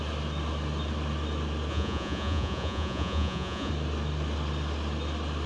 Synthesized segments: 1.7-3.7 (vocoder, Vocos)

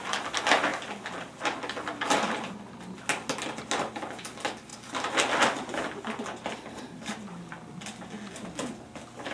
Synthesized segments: none